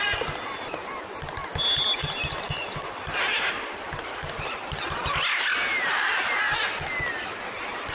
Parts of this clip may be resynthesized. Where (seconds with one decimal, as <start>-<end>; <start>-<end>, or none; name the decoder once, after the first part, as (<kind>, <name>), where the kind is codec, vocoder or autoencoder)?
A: none